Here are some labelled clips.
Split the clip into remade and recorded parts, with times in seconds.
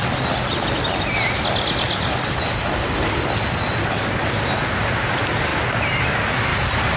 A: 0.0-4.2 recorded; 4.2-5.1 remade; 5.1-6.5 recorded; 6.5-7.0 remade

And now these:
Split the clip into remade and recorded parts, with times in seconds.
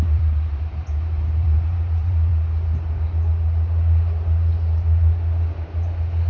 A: 0.0-2.3 remade; 2.3-6.3 recorded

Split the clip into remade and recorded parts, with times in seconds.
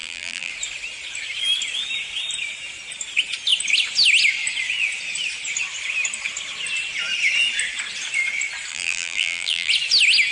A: 0.0-0.5 remade; 0.5-8.7 recorded; 8.7-9.7 remade; 9.7-10.3 recorded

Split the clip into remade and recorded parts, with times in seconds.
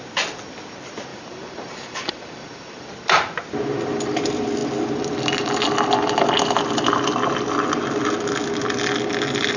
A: 0.0-1.1 recorded; 1.1-2.9 remade; 2.9-9.6 recorded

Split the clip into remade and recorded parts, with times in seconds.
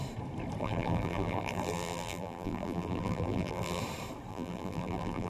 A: 0.0-0.6 recorded; 0.6-3.8 remade; 3.8-4.3 recorded; 4.3-5.3 remade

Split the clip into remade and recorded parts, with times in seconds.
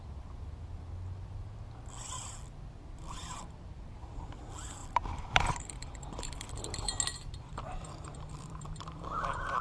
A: 0.0-3.2 recorded; 3.2-4.3 remade; 4.3-4.8 recorded; 4.8-6.5 remade; 6.5-7.1 recorded; 7.1-9.0 remade; 9.0-9.6 recorded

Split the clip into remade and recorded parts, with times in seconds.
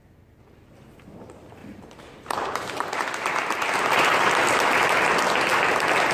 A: 0.0-1.6 recorded; 1.6-3.0 remade; 3.0-6.1 recorded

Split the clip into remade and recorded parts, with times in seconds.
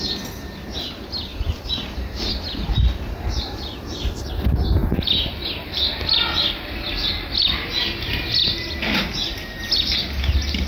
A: 0.0-1.3 recorded; 1.3-4.3 remade; 4.3-10.7 recorded